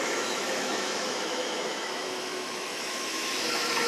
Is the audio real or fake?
fake